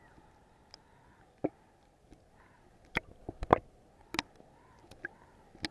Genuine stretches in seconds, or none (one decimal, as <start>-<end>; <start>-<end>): 0.0-5.7

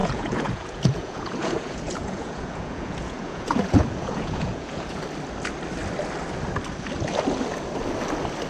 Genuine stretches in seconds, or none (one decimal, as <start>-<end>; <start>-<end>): 5.0-8.5

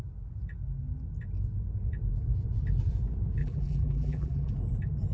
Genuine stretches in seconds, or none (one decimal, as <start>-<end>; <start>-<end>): 0.0-3.4; 4.5-5.1